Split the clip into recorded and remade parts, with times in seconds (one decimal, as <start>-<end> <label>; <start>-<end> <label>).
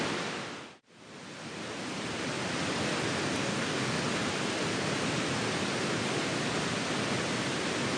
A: 0.0-3.4 recorded; 3.4-4.0 remade; 4.0-8.0 recorded